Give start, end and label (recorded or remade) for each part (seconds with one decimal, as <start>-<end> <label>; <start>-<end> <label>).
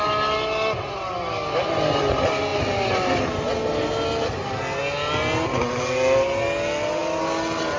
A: 0.0-7.8 recorded